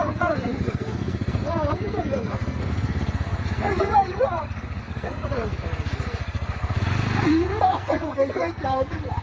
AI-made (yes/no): yes